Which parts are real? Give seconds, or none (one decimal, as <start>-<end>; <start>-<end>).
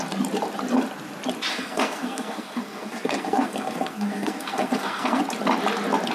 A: 0.0-1.5; 5.2-6.1